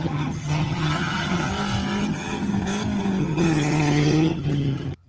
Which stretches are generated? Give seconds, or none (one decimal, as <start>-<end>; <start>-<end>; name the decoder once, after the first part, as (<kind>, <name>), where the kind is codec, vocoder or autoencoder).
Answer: 0.0-1.5 (vocoder, HiFi-GAN); 2.0-2.5; 3.2-5.1